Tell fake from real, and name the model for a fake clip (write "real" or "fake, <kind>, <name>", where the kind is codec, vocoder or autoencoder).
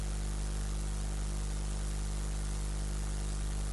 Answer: real